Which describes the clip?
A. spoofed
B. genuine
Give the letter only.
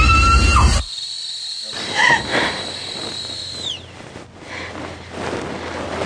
B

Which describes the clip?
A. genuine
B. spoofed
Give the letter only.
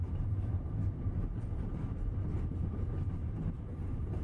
B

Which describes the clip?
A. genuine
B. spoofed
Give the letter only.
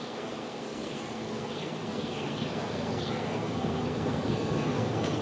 B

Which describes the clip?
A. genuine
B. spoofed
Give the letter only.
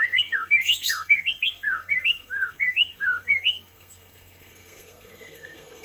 B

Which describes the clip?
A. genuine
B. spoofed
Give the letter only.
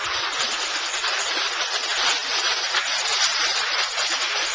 A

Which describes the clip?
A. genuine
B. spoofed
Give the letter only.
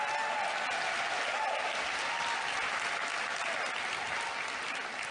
A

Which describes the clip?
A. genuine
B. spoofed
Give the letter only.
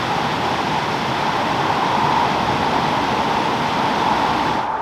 A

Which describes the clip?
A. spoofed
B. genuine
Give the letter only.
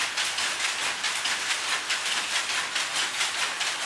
B